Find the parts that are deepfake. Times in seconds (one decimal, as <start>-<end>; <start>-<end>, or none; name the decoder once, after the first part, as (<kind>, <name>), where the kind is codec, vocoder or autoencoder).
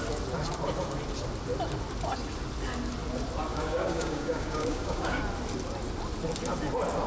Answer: 3.5-5.2 (codec, DAC)